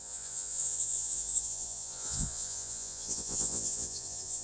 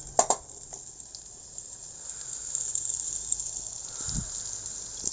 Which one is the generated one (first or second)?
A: first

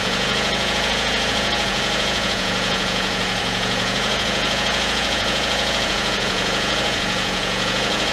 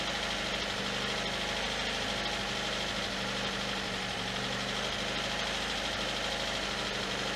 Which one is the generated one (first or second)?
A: first